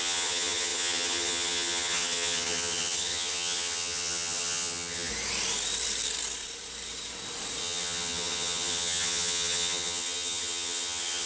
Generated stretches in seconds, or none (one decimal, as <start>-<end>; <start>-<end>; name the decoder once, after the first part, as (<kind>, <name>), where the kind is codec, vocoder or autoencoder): 0.0-5.1 (vocoder, HiFi-GAN); 7.6-11.3